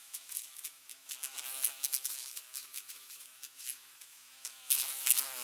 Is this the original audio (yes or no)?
no